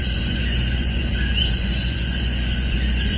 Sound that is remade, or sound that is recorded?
remade